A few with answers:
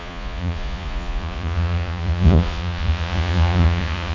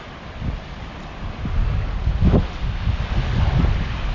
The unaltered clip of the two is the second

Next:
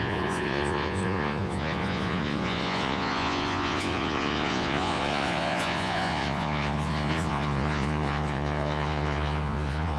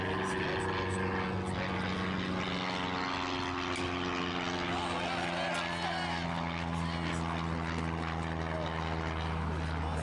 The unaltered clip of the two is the second